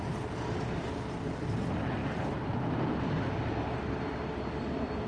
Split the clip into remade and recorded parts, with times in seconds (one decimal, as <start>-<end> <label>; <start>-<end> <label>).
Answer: 0.0-5.1 recorded